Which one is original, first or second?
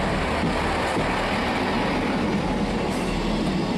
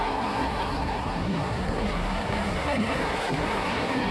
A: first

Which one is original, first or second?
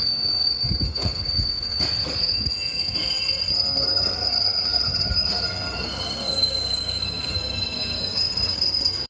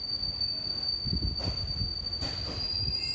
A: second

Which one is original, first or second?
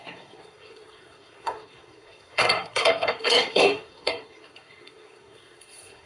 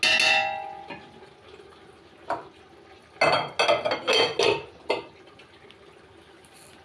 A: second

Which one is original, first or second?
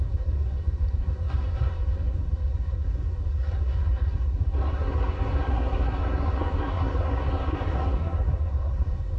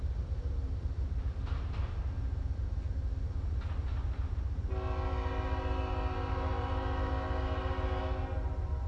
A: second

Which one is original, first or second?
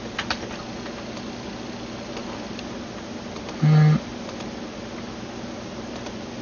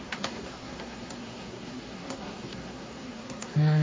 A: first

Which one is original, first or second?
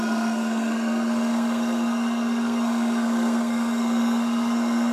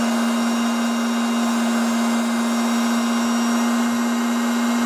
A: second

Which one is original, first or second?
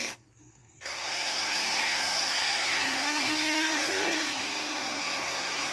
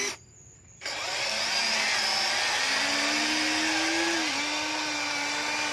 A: second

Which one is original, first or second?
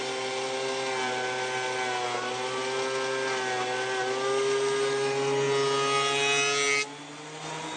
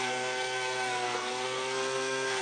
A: first